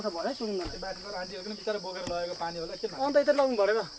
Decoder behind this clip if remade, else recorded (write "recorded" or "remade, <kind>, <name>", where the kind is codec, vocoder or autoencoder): recorded